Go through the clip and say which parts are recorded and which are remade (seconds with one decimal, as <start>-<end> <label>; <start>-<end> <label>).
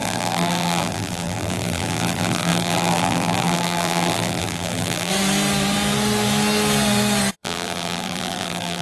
0.0-5.1 remade; 5.1-7.3 recorded; 7.3-8.8 remade